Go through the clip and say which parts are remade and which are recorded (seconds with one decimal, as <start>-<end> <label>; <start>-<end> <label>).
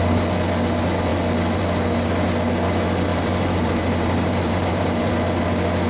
0.0-3.1 recorded; 3.1-5.1 remade; 5.1-5.9 recorded